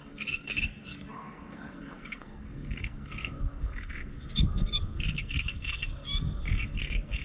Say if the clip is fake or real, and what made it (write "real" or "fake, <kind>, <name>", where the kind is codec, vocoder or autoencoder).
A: fake, codec, SNAC